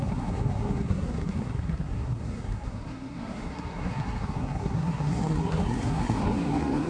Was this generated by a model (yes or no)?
yes